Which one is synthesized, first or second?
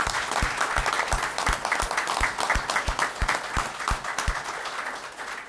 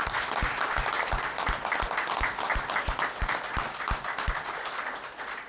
second